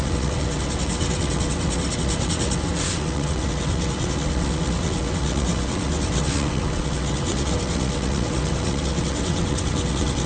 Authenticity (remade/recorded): remade